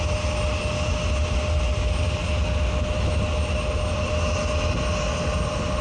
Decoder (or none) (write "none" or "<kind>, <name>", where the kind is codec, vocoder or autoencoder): none